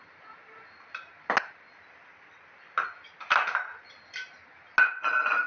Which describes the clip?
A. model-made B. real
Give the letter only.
B